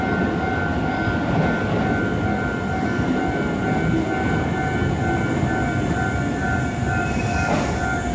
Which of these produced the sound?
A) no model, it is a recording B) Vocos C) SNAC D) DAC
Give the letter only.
A